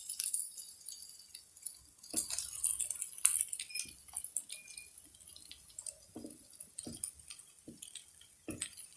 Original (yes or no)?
yes